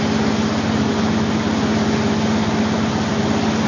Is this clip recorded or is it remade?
recorded